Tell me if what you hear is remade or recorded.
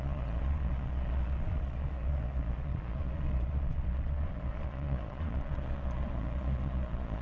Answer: remade